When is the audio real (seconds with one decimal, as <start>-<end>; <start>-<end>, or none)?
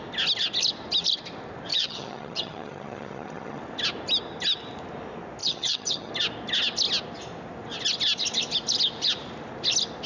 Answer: 0.0-1.7; 3.6-5.4; 6.1-10.1